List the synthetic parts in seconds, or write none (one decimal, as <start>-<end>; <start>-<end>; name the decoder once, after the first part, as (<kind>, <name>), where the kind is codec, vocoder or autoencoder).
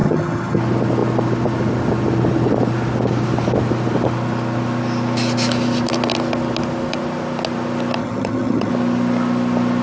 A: 0.0-0.6 (vocoder, HiFi-GAN); 8.0-8.7